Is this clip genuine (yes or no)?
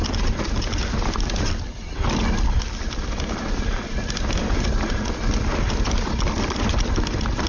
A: yes